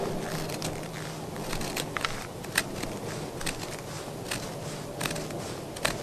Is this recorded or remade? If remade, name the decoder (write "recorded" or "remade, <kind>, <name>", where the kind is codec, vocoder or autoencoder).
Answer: recorded